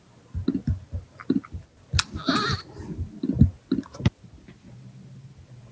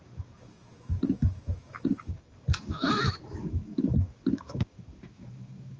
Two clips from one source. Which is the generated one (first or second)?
second